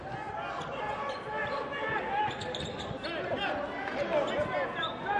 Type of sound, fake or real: real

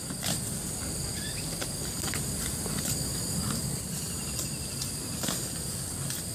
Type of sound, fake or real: real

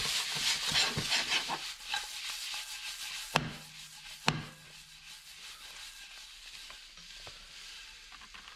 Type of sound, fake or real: real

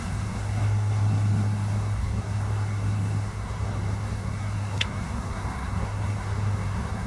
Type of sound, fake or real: fake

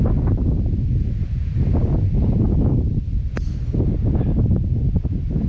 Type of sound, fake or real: real